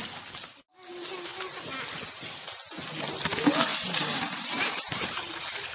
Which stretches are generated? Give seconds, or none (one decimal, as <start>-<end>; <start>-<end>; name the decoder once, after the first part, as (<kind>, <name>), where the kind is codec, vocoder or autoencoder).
3.7-5.3 (vocoder, BigVGAN v2)